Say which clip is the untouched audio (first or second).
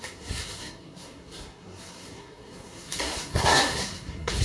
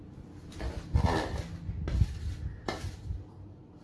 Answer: second